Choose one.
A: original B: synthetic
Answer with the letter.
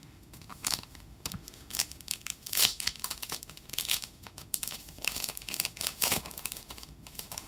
B